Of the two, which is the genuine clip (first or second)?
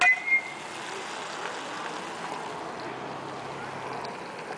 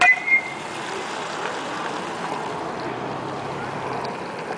first